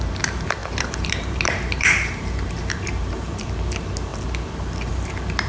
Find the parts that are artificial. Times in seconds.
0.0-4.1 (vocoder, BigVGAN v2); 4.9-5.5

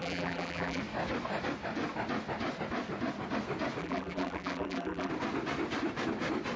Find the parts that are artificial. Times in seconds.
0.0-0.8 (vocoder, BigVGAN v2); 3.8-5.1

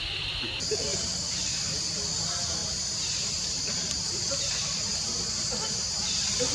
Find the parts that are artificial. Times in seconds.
2.6-5.0 (vocoder, BigVGAN v2)

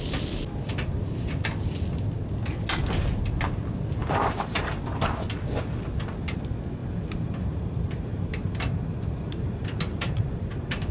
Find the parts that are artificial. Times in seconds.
4.0-4.7 (vocoder, BigVGAN v2); 6.8-10.9